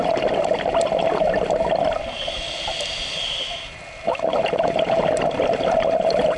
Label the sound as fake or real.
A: real